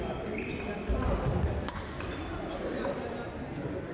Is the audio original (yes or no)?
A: yes